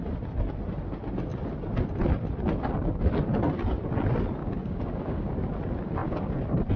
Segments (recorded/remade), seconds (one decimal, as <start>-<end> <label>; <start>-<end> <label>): 0.0-4.4 recorded; 4.4-5.3 remade; 5.3-6.8 recorded